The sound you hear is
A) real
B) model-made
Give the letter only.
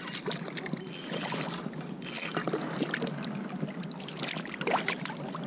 A